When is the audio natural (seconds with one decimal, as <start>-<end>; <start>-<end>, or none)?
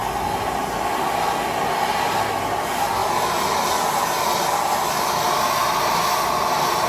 0.0-0.6; 3.0-3.9